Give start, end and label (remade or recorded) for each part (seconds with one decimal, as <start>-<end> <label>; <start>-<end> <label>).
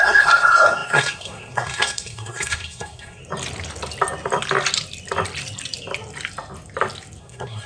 0.0-3.2 remade; 3.2-7.2 recorded; 7.2-7.7 remade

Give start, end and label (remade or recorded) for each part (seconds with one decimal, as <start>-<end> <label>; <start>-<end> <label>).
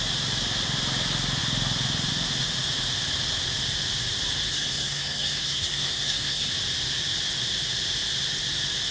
0.0-4.5 recorded; 4.5-6.5 remade; 6.5-8.9 recorded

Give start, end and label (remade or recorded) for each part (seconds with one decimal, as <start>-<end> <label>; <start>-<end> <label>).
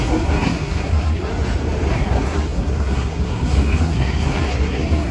0.0-1.3 remade; 1.3-1.9 recorded; 1.9-5.1 remade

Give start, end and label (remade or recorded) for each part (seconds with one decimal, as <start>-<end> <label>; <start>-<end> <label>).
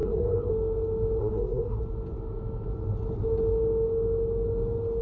0.0-0.5 remade; 0.5-1.2 recorded; 1.2-1.8 remade; 1.8-5.0 recorded